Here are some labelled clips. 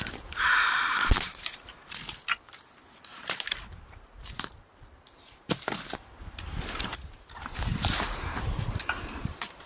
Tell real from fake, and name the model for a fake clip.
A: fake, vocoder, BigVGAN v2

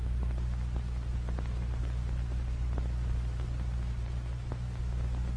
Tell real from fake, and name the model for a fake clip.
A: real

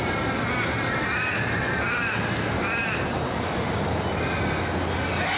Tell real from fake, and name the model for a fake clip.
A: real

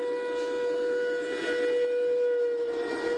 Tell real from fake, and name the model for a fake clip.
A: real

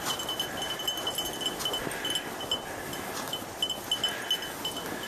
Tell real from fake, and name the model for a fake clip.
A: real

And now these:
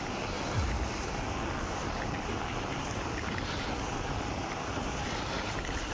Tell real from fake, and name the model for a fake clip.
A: real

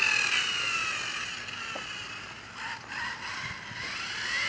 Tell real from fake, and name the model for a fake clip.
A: real